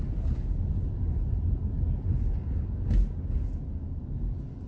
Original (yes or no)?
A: yes